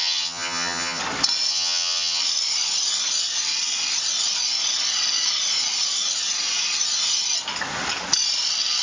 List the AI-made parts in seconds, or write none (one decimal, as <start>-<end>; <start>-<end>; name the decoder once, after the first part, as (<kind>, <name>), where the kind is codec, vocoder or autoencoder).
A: 0.0-1.0 (vocoder, HiFi-GAN); 1.5-2.2

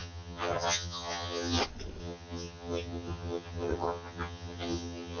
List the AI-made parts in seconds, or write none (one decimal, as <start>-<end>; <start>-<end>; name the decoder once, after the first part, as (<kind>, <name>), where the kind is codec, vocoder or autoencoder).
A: 0.0-1.6 (vocoder, HiFi-GAN); 2.0-5.2

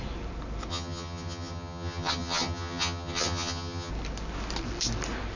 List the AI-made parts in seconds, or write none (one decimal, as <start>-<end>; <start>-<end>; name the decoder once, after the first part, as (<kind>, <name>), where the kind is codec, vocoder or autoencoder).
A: 0.7-3.9 (vocoder, HiFi-GAN)

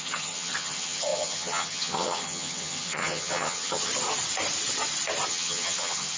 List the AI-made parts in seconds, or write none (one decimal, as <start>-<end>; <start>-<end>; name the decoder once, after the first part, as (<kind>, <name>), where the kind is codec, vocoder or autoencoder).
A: 0.0-3.9 (vocoder, HiFi-GAN); 5.3-6.2

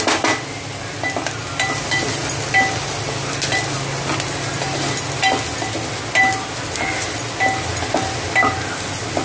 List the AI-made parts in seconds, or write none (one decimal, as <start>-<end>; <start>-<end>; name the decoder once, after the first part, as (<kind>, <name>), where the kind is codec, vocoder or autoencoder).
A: none

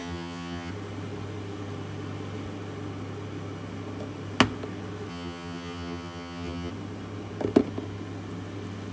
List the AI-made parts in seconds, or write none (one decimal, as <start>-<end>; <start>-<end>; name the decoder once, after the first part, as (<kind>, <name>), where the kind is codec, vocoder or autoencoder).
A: 0.0-0.7 (vocoder, HiFi-GAN); 5.1-6.7